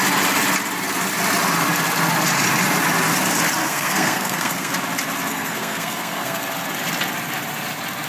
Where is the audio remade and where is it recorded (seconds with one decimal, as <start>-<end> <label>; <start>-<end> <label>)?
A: 0.0-3.6 recorded; 3.6-4.7 remade; 4.7-5.3 recorded; 5.3-6.4 remade; 6.4-8.1 recorded

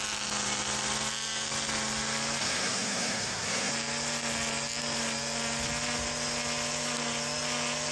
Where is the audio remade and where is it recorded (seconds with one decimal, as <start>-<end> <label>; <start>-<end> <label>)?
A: 0.0-2.4 recorded; 2.4-3.7 remade; 3.7-7.9 recorded